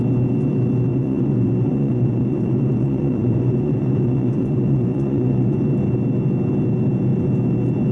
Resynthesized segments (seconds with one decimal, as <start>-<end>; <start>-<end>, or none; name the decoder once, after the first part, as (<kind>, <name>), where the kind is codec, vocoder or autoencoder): 0.9-5.6 (vocoder, Vocos)